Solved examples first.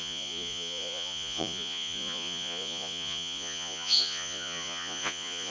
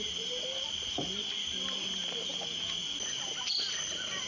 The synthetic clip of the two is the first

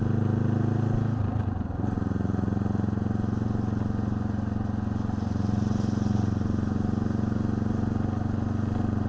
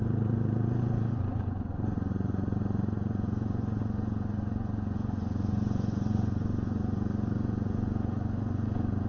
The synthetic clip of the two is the second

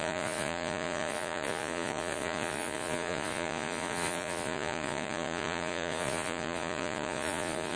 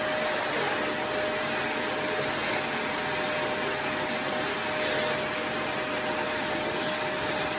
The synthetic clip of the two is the first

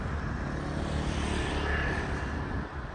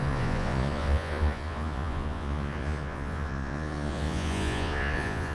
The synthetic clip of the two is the second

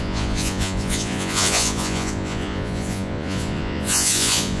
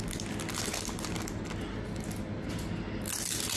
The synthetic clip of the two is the first